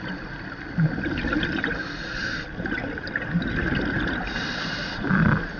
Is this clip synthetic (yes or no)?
no